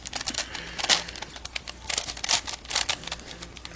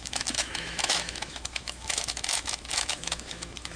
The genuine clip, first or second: first